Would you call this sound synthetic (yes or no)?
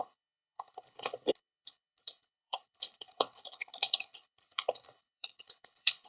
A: yes